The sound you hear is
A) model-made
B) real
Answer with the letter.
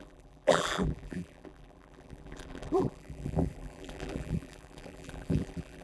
A